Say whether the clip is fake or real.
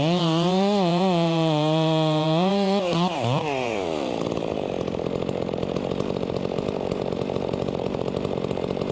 fake